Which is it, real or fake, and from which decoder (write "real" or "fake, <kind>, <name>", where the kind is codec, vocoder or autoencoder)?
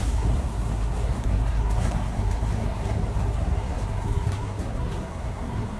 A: fake, codec, SNAC